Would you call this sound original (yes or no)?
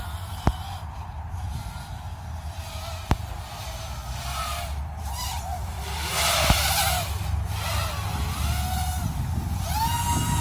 yes